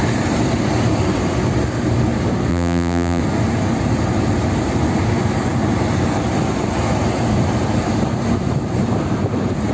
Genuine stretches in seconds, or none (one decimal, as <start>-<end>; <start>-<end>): 0.0-2.5; 3.2-9.7